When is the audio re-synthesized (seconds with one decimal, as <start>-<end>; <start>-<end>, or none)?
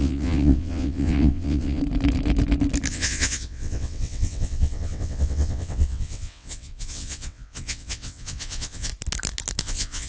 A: 0.0-1.8; 2.9-8.9; 9.6-10.1